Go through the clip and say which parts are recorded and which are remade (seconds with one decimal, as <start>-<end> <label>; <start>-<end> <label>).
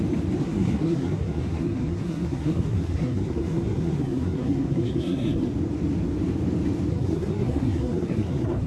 0.0-0.4 recorded; 0.4-5.5 remade; 5.5-6.9 recorded; 6.9-8.7 remade